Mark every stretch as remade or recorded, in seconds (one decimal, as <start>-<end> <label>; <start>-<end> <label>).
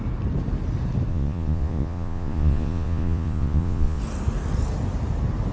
0.0-1.1 recorded; 1.1-4.0 remade; 4.0-5.5 recorded